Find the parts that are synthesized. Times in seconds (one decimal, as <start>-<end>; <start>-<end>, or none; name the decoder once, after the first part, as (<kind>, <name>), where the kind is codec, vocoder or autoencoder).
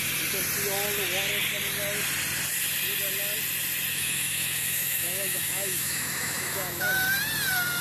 3.9-6.9 (autoencoder, DAC-VAE)